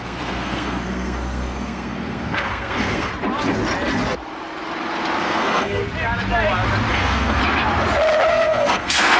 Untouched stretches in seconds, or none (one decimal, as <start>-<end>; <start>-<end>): 3.1-5.2; 5.8-6.9; 7.4-8.3